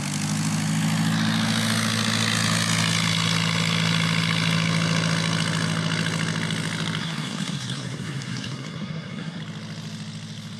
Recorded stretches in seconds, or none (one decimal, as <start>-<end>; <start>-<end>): 0.0-7.0; 9.4-10.6